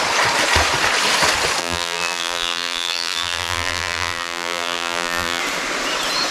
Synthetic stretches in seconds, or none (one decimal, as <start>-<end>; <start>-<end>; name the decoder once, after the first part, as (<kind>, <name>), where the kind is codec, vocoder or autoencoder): 1.6-5.4 (vocoder, BigVGAN v2)